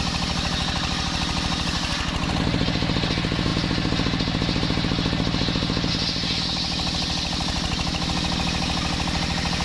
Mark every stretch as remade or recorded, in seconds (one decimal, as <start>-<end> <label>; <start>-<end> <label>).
0.0-9.6 recorded